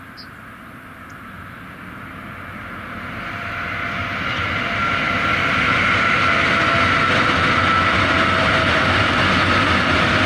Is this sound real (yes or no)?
yes